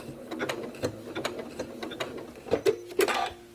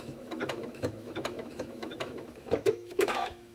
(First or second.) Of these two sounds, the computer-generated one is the second